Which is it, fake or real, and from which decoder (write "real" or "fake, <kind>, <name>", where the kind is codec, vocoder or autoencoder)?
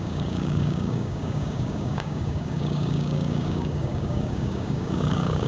fake, codec, DAC